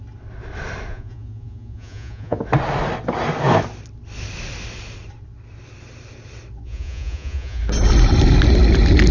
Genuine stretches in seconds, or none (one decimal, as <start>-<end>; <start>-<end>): 0.0-0.9; 2.4-6.6; 7.6-9.1